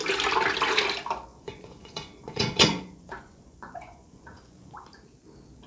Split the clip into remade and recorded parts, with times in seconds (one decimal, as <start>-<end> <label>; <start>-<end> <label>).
0.0-1.3 recorded; 1.3-4.7 remade; 4.7-5.7 recorded